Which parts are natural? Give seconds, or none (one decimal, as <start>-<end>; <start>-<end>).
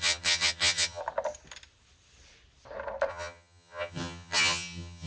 1.0-3.1